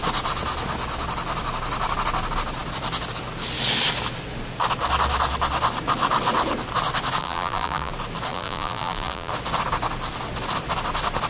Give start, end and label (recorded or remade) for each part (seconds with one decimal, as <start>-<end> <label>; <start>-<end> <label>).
0.0-7.2 recorded; 7.2-7.9 remade; 7.9-8.3 recorded; 8.3-9.3 remade; 9.3-11.3 recorded